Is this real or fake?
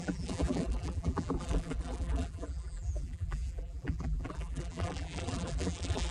fake